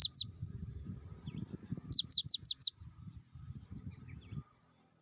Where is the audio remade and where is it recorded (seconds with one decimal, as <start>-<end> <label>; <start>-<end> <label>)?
0.0-2.2 remade; 2.2-3.4 recorded; 3.4-5.0 remade